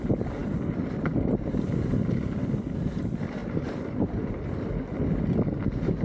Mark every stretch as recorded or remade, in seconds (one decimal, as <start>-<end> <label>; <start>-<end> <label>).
0.0-6.0 recorded